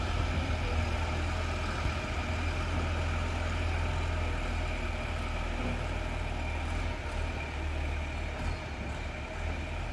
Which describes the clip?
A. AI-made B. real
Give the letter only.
B